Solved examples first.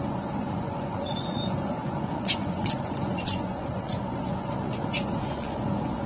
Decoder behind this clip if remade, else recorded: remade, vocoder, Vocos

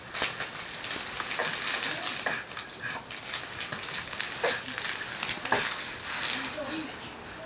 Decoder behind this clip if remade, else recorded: recorded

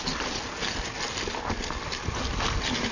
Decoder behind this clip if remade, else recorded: recorded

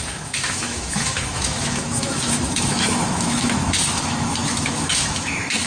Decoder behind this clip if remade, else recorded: remade, autoencoder, DAC-VAE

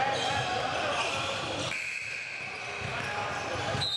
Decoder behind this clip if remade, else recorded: recorded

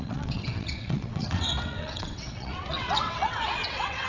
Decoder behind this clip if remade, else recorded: remade, vocoder, WaveNeXt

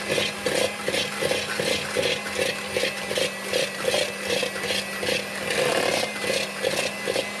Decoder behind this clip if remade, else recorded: recorded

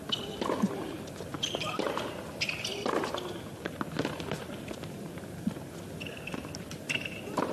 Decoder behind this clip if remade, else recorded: recorded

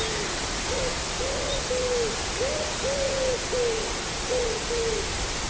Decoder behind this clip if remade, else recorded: recorded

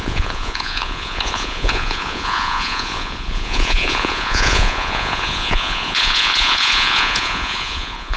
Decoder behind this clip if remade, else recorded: remade, vocoder, Vocos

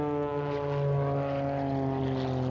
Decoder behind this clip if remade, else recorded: recorded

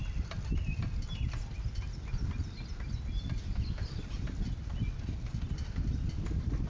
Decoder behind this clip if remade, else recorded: recorded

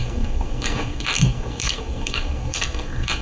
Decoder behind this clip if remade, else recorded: remade, codec, SNAC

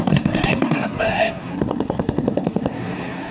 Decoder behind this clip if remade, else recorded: remade, codec, SNAC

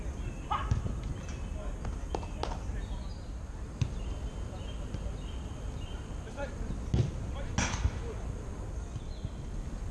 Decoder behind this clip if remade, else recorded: recorded